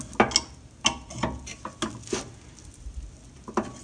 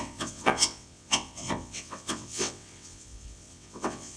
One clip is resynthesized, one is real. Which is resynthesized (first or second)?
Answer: second